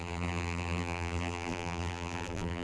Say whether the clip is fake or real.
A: fake